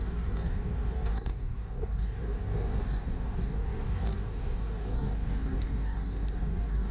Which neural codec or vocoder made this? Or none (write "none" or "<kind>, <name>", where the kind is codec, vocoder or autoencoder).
codec, DAC